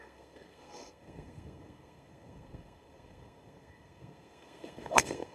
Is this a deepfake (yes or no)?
yes